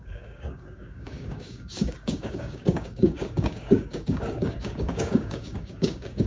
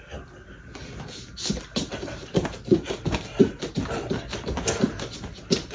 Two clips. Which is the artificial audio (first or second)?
first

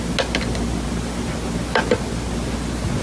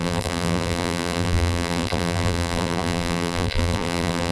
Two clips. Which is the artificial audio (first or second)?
second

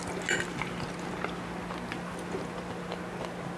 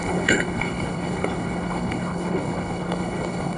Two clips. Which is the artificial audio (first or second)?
second